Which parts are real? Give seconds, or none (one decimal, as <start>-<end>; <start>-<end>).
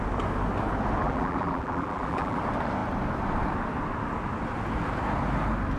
0.0-1.0; 2.4-5.8